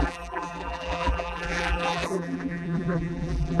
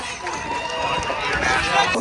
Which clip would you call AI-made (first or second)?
first